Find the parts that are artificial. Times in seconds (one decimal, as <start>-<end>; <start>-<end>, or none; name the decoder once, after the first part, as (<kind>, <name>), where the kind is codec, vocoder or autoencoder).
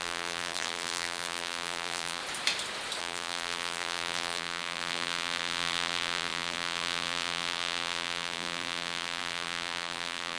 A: 0.0-2.2 (vocoder, BigVGAN v2); 3.0-10.4